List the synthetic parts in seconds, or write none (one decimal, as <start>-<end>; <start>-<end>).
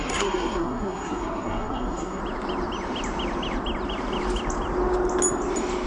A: 0.0-2.2